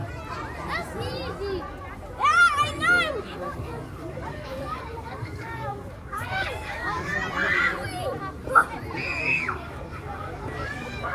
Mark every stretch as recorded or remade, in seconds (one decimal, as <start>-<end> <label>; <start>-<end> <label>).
0.0-3.2 recorded; 3.2-7.1 remade; 7.1-9.2 recorded; 9.2-11.1 remade